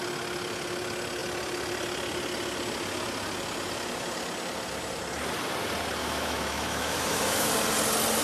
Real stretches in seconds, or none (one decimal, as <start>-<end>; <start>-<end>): 0.0-6.0; 7.5-8.2